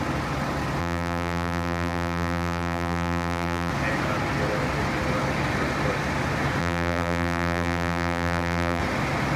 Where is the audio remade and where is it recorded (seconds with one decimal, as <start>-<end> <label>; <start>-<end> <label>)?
0.0-0.8 recorded; 0.8-3.7 remade; 3.7-6.6 recorded; 6.6-8.8 remade; 8.8-9.4 recorded